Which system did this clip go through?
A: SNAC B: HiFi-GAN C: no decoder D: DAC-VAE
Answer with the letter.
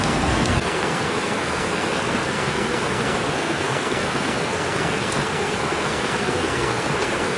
A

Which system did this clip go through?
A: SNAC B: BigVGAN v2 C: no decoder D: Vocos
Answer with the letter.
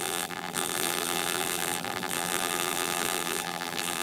B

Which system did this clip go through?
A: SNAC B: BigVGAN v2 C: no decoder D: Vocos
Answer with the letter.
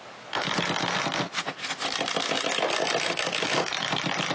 C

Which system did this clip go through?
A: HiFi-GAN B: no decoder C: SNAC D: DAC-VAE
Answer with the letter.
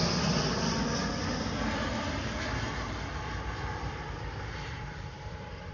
B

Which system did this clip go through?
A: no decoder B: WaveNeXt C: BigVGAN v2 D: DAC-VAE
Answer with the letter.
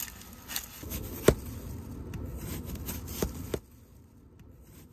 A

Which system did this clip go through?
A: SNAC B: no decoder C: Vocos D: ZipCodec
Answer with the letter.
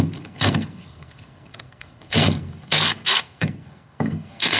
A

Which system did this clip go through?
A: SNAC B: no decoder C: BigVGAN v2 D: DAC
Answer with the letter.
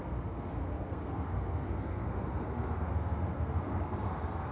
A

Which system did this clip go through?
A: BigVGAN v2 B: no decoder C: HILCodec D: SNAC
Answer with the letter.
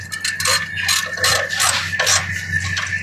B